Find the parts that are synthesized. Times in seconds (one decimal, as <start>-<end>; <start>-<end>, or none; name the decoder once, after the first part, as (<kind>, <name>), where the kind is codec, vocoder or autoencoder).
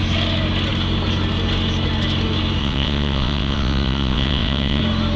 2.6-4.8 (vocoder, WaveNeXt)